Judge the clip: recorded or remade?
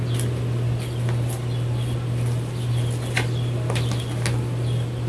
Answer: recorded